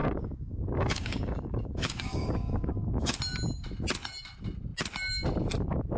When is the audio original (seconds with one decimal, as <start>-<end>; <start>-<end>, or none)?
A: 3.2-6.0